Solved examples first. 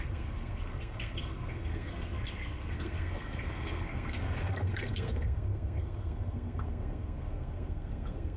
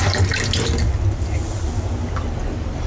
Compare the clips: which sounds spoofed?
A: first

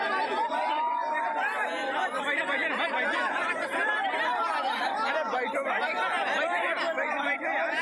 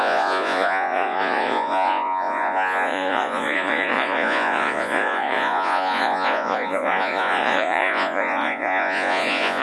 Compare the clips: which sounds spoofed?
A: second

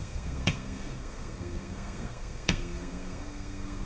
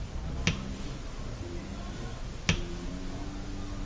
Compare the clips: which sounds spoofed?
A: first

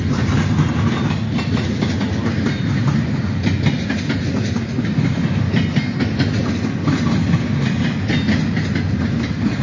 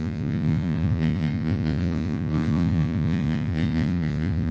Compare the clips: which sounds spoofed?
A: second